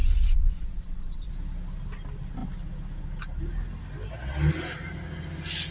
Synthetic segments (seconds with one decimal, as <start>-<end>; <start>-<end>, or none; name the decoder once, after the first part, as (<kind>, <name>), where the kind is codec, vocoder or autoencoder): 0.0-1.3 (vocoder, Vocos)